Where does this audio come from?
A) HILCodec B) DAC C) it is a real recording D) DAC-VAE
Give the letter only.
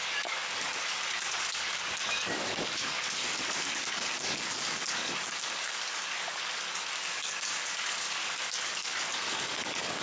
B